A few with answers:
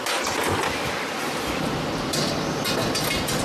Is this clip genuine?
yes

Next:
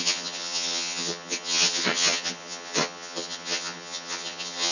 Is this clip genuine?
no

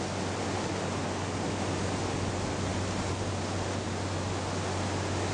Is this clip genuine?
yes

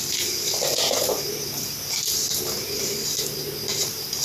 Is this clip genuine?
yes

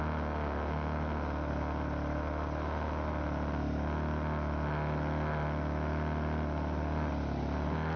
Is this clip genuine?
yes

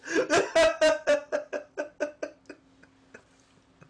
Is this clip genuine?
yes